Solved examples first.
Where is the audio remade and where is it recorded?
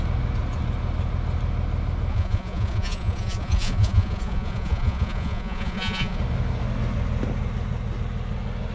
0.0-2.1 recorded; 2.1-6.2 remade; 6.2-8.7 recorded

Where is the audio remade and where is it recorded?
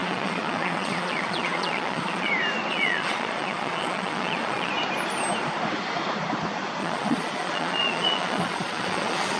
0.0-2.3 remade; 2.3-2.7 recorded; 2.7-4.7 remade; 4.7-6.8 recorded; 6.8-9.4 remade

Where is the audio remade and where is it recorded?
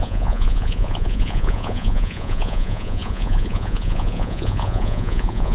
0.0-5.5 remade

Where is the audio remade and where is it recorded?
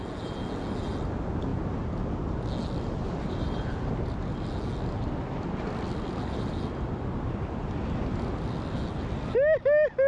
0.0-10.1 recorded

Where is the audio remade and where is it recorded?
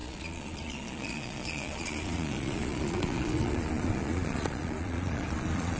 0.0-5.8 remade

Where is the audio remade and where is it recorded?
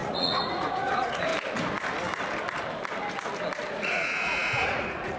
0.0-1.3 remade; 1.3-3.7 recorded; 3.7-5.2 remade